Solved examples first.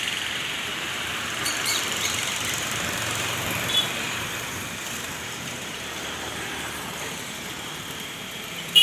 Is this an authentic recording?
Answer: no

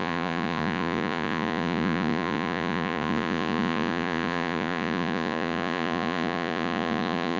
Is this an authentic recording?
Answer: no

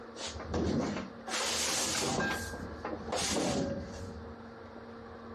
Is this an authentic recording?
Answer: yes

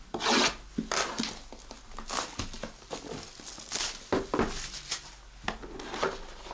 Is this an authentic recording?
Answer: yes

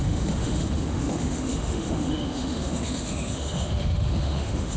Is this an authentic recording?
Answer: no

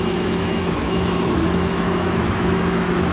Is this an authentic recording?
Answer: no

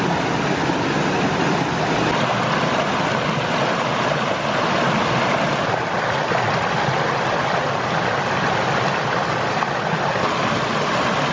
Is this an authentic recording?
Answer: yes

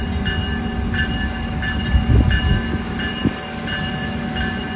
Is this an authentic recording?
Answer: yes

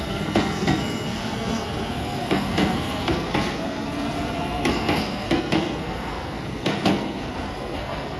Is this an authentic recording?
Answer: no